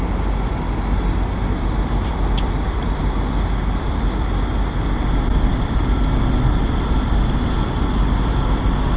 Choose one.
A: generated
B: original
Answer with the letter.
A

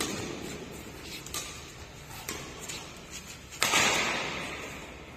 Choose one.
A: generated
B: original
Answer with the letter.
A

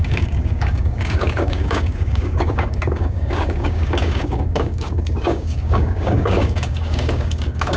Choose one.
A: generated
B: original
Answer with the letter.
A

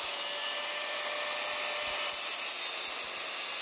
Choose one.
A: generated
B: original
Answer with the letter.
B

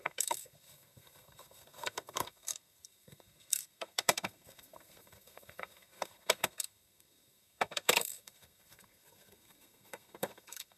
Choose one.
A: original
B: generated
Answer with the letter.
B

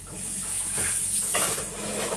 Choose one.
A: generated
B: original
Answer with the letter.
A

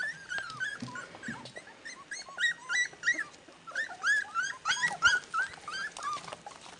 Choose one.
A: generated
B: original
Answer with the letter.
B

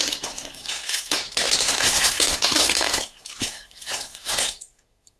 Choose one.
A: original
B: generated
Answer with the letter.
B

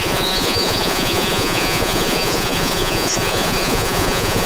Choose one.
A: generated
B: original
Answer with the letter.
A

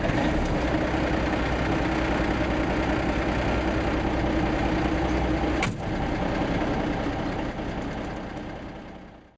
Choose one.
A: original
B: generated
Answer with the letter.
A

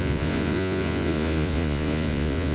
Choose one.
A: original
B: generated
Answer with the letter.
B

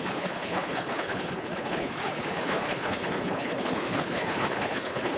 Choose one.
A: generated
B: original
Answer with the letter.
A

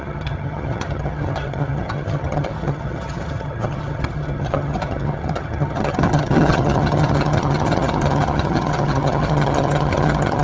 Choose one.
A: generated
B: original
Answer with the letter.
A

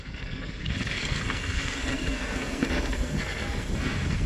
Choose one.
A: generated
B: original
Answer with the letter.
A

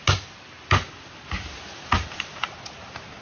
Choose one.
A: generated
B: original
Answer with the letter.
B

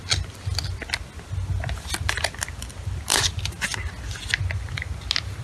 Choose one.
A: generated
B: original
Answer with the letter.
B